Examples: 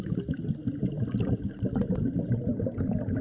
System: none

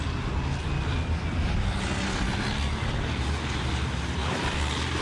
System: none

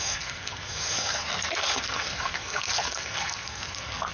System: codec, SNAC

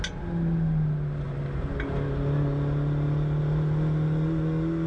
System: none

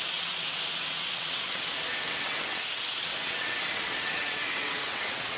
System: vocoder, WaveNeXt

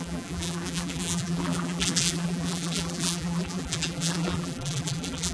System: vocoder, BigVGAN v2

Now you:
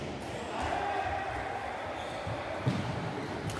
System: none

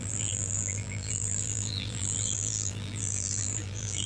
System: vocoder, BigVGAN v2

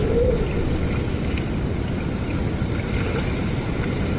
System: none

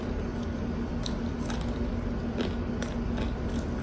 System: none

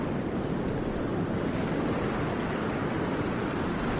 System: none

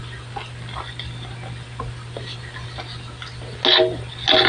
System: none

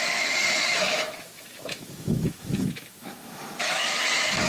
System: autoencoder, DAC-VAE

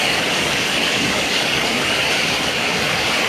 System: codec, DAC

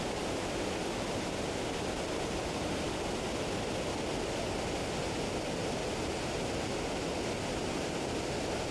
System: none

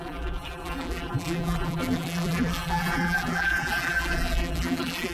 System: vocoder, BigVGAN v2